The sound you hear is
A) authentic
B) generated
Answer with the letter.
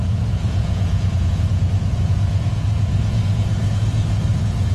B